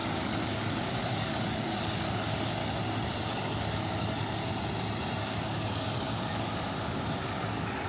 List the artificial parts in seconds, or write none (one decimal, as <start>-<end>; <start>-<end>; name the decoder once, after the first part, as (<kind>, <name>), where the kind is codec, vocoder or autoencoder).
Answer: 0.0-2.6 (codec, DAC); 3.2-4.4; 5.2-7.9